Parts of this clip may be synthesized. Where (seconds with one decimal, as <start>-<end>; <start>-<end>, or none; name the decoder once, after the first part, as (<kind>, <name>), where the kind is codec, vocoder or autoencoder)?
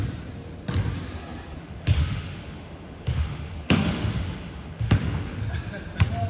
1.6-5.4 (autoencoder, DAC-VAE)